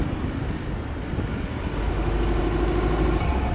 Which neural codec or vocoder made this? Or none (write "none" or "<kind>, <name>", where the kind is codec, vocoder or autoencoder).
none